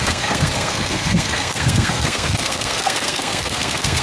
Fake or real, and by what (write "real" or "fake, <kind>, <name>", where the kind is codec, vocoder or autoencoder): fake, codec, SNAC